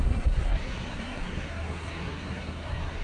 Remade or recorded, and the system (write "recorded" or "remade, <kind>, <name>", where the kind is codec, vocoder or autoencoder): remade, codec, SNAC